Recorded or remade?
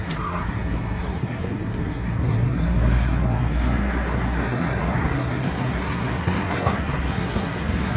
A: remade